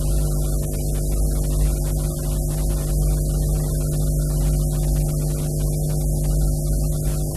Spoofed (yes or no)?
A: no